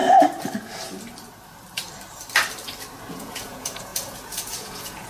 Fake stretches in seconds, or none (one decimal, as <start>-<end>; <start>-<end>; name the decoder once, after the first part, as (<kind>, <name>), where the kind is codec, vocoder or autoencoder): 3.1-5.1 (vocoder, Vocos)